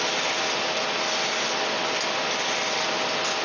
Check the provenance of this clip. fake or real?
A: real